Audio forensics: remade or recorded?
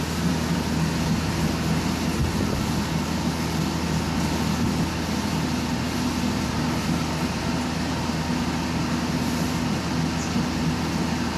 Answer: recorded